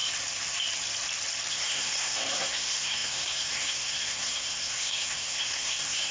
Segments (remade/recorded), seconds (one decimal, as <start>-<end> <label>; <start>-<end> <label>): 0.0-1.5 recorded; 1.5-6.1 remade